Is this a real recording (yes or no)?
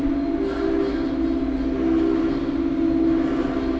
yes